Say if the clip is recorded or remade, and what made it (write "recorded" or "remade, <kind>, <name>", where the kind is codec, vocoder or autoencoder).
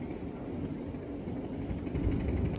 recorded